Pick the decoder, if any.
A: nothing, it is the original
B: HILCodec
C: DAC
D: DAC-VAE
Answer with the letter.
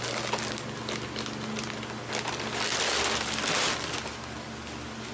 A